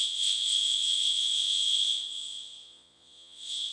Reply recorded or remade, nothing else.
remade